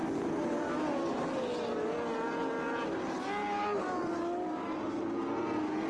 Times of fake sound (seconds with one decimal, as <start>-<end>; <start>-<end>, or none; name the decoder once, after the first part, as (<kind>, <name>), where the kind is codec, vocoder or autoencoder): none